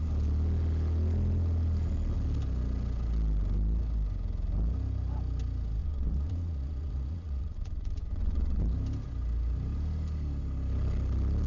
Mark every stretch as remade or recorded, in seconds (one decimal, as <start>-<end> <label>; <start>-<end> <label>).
0.0-5.8 recorded; 5.8-8.6 remade; 8.6-11.5 recorded